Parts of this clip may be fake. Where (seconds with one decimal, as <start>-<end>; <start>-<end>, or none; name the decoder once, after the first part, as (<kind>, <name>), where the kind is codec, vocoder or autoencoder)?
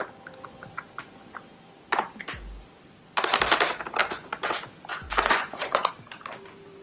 4.0-4.5 (vocoder, Vocos); 4.9-5.9